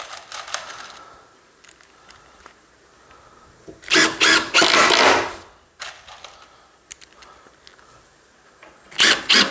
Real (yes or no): yes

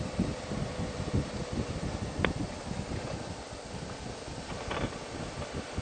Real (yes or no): yes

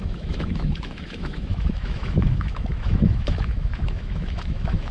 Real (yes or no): no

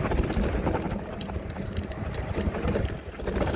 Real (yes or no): yes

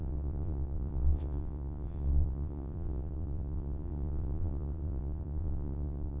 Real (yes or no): no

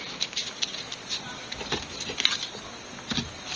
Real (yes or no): yes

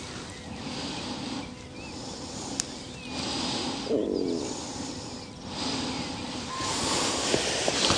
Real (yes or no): yes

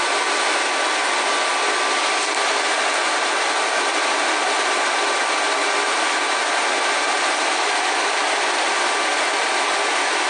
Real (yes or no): yes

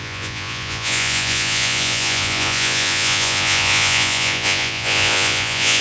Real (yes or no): no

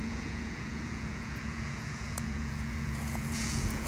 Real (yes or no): no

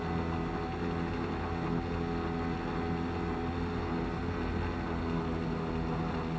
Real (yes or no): yes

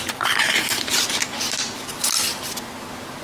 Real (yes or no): yes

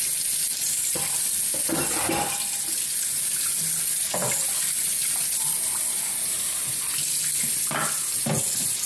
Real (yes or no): yes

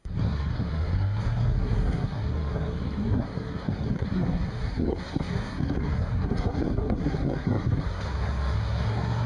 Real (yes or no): no